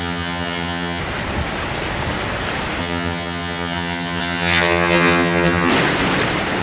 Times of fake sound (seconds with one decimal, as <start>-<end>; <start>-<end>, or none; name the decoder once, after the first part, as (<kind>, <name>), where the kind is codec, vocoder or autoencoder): 0.0-1.0 (vocoder, HiFi-GAN); 2.8-5.7